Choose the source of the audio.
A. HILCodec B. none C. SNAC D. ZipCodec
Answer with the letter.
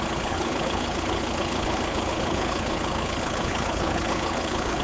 A